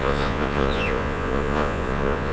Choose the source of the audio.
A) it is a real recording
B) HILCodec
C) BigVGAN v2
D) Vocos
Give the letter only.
D